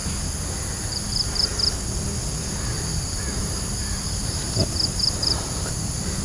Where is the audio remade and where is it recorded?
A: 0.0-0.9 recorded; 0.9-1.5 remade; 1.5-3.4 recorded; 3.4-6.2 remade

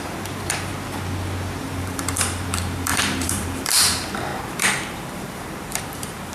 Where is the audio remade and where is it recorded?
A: 0.0-0.7 remade; 0.7-1.6 recorded; 1.6-6.3 remade